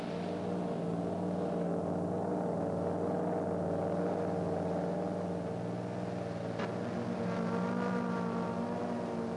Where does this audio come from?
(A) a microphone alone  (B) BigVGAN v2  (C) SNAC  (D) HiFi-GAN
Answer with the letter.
A